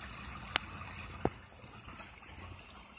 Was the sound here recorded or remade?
recorded